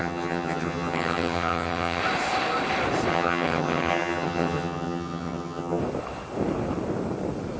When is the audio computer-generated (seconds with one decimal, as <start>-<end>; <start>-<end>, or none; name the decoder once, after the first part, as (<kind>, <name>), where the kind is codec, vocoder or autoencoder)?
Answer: 0.0-2.0 (vocoder, HiFi-GAN); 3.1-5.8